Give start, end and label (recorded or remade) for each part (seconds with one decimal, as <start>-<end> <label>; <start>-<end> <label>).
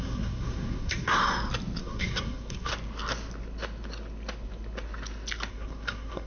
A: 0.0-1.2 remade; 1.2-1.8 recorded; 1.8-2.7 remade; 2.7-5.5 recorded; 5.5-6.3 remade